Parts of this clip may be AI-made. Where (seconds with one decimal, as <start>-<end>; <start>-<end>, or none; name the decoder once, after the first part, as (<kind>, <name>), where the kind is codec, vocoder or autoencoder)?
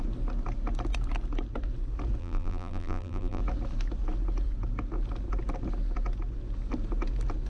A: 2.2-3.4 (vocoder, BigVGAN v2)